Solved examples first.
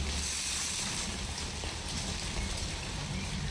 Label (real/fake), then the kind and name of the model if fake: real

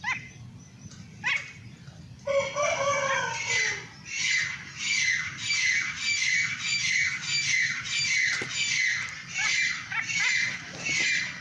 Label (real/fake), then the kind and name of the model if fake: real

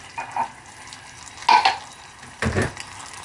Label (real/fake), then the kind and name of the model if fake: real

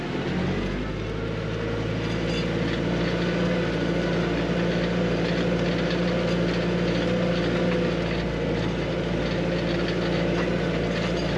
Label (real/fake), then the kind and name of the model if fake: real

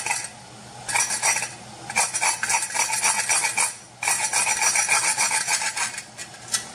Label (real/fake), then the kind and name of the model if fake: real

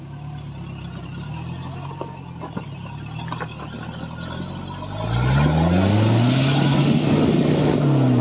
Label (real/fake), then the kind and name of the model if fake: real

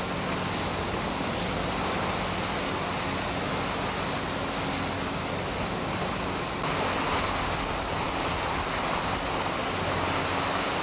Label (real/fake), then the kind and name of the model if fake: real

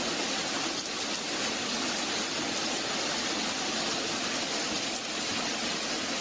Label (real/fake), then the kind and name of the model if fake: real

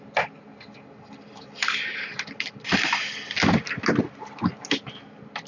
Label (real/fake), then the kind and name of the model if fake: real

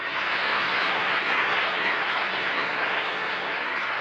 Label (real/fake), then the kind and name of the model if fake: fake, codec, SNAC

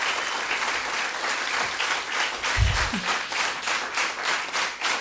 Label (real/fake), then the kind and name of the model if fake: real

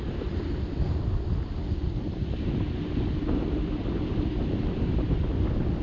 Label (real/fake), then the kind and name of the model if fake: real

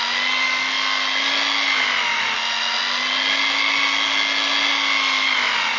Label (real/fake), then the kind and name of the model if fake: real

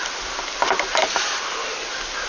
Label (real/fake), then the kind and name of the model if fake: real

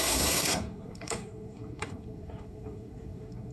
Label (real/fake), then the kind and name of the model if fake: fake, codec, SNAC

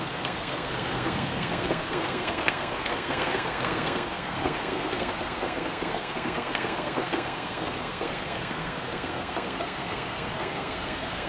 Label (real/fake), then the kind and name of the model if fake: fake, codec, SNAC